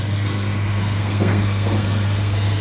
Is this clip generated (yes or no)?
yes